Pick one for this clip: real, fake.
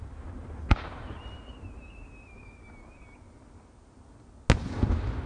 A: real